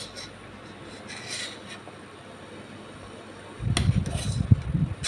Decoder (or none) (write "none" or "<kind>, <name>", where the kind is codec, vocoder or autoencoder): none